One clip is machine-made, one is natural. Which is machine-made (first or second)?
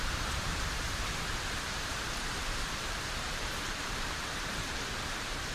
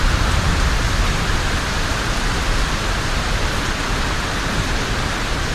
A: first